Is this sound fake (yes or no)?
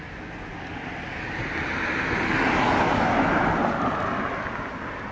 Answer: no